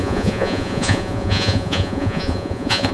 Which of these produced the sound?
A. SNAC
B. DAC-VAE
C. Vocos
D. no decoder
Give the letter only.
C